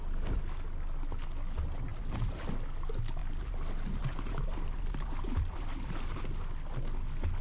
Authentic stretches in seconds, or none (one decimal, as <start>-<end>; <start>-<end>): 0.0-1.9; 2.5-3.2; 6.2-7.4